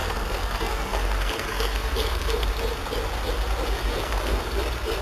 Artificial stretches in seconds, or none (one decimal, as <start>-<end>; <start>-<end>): 0.0-2.5; 3.8-4.6